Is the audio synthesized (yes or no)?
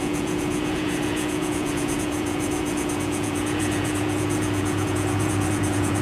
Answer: yes